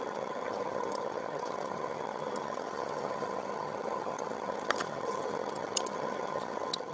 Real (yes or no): no